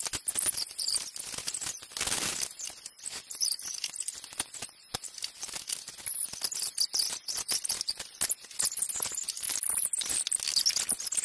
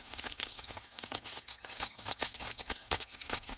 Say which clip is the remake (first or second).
second